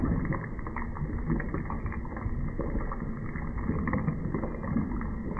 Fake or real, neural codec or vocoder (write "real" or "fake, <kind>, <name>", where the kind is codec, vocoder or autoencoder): real